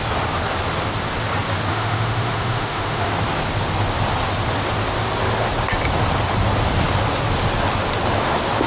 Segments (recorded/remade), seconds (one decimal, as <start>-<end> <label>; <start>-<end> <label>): 0.0-1.7 recorded; 1.7-3.1 remade; 3.1-8.7 recorded